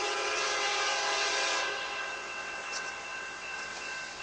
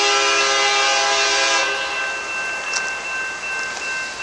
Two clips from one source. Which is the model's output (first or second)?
first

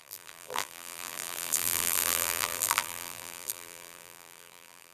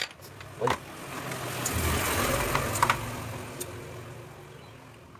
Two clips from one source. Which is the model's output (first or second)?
first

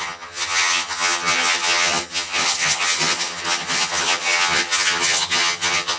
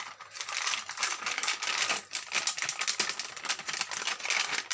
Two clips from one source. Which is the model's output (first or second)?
first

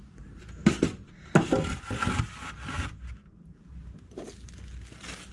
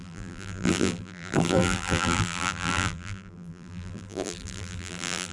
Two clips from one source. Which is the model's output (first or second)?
second